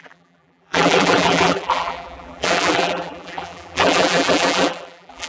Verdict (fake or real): fake